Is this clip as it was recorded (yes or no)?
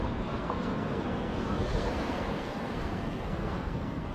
no